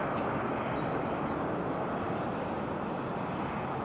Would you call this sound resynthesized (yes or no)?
no